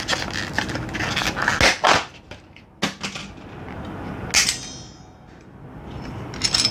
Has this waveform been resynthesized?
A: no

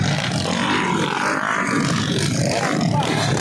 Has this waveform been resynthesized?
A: yes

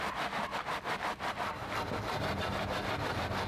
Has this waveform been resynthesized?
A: no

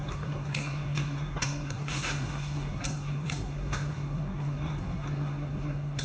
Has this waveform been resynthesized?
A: yes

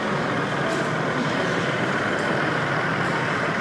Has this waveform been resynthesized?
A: no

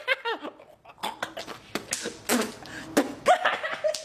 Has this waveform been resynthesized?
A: no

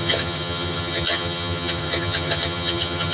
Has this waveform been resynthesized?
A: yes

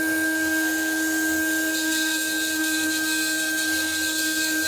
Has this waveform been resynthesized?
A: yes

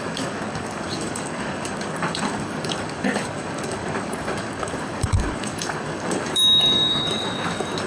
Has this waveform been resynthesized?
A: yes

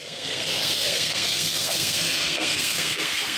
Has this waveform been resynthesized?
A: yes